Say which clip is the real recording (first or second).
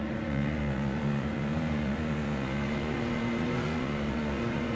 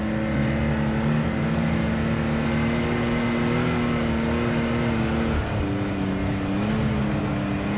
second